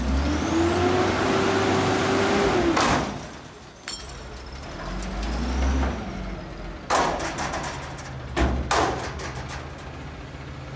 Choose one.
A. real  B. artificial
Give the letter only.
A